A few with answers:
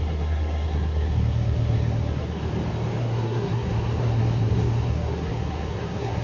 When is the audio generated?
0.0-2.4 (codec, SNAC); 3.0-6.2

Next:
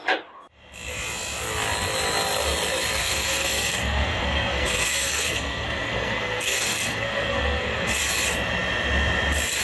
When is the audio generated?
3.0-8.0 (codec, SNAC)

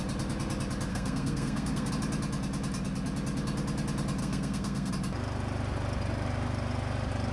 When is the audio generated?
0.9-1.9 (codec, SNAC); 4.2-4.9